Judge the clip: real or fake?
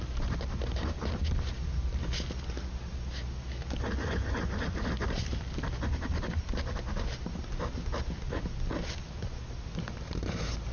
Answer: real